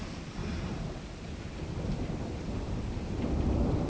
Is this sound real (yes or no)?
yes